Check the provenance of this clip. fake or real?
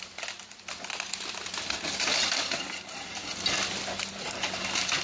real